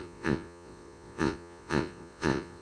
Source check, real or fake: fake